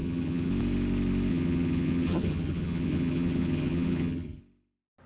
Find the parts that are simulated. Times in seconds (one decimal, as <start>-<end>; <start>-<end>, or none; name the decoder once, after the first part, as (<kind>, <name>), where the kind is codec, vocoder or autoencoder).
0.0-0.5 (vocoder, HiFi-GAN); 1.3-4.4